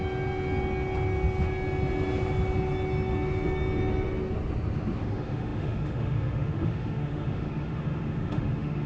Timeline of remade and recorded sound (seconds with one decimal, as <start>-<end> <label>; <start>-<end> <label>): 0.0-5.0 recorded; 5.0-8.9 remade

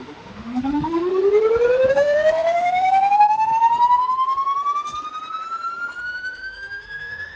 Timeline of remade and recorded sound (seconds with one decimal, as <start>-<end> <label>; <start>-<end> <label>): 0.0-1.1 remade; 1.1-1.9 recorded; 1.9-3.5 remade; 3.5-6.0 recorded; 6.0-7.4 remade

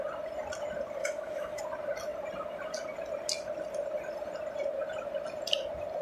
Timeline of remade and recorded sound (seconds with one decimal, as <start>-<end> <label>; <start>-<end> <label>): 0.0-1.0 recorded; 1.0-1.6 remade; 1.6-6.0 recorded

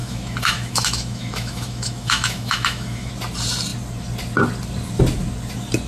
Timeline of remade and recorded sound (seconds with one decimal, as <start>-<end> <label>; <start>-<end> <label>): 0.0-3.1 remade; 3.1-5.9 recorded

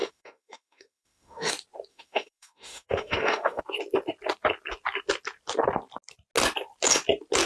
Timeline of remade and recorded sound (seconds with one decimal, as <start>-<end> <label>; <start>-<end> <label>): 0.0-1.5 remade; 1.5-1.9 recorded; 1.9-3.6 remade; 3.6-7.5 recorded

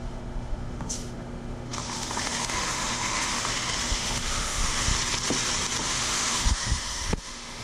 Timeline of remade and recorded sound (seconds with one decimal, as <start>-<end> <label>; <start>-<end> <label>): 0.0-4.9 remade; 4.9-5.8 recorded; 5.8-7.6 remade

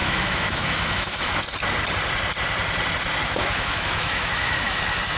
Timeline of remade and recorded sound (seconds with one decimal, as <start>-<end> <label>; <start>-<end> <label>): 0.0-1.3 remade; 1.3-3.4 recorded; 3.4-4.8 remade; 4.8-5.2 recorded

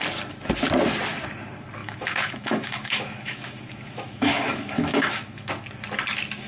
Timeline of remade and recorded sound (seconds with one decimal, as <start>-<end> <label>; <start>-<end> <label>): 0.0-1.8 recorded; 1.8-5.5 remade; 5.5-6.5 recorded